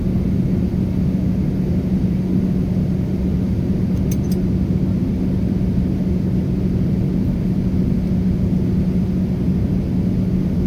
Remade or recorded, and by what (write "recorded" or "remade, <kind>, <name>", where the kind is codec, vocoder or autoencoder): recorded